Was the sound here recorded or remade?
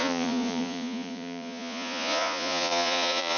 remade